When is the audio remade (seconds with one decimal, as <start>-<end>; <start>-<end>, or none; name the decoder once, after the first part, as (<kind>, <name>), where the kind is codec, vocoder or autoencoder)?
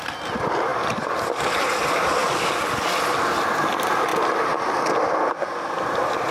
none